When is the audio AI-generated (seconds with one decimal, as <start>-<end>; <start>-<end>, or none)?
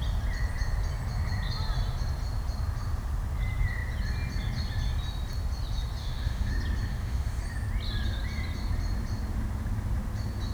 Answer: 6.0-6.5; 6.9-7.4